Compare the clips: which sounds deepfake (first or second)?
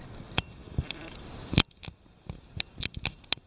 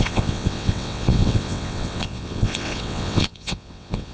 second